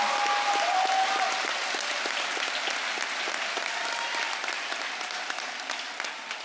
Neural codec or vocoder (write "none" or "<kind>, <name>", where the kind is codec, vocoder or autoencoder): none